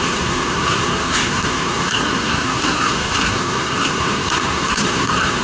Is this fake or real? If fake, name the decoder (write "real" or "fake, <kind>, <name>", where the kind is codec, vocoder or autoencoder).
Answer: fake, codec, SNAC